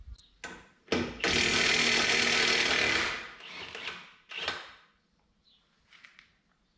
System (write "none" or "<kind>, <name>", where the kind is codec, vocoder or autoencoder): none